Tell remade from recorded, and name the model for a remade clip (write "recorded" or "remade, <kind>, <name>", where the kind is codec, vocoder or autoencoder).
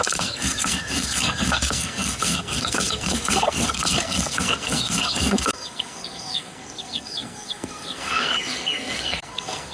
remade, codec, SNAC